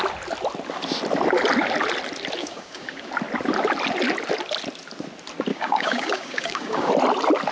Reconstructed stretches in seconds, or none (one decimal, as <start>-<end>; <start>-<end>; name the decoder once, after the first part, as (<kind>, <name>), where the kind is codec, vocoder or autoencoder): 2.4-3.1 (codec, DAC); 5.5-6.9